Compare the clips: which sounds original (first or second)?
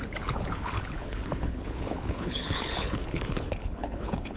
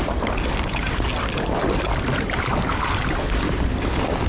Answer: second